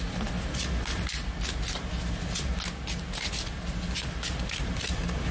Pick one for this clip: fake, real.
real